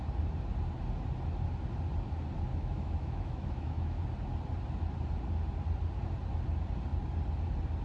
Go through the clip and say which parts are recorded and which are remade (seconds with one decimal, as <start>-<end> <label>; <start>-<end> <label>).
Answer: 0.0-2.5 recorded; 2.5-4.0 remade; 4.0-7.8 recorded